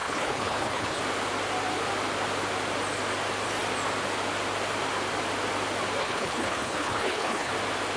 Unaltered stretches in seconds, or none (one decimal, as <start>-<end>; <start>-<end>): 1.0-6.0; 7.5-8.0